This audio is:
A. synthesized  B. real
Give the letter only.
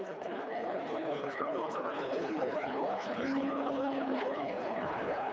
A